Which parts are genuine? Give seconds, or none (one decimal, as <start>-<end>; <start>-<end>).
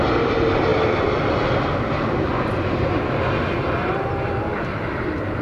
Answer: 0.0-5.4